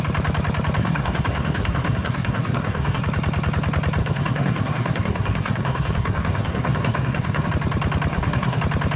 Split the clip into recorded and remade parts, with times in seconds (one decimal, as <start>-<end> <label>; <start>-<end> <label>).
0.0-0.8 recorded; 0.8-3.0 remade; 3.0-4.0 recorded; 4.0-7.5 remade; 7.5-8.1 recorded; 8.1-8.6 remade; 8.6-9.0 recorded